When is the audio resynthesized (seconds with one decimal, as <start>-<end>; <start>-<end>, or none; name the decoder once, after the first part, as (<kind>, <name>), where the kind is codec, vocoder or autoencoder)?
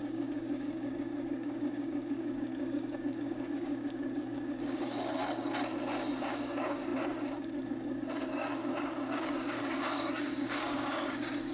0.0-5.2 (codec, DAC); 6.2-11.5